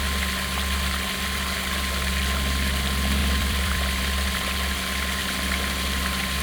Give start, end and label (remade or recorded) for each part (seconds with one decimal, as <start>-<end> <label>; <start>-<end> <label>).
0.0-3.2 recorded; 3.2-4.0 remade; 4.0-6.4 recorded